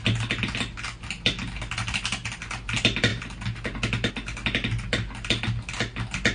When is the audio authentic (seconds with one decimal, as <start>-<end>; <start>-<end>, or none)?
0.0-6.3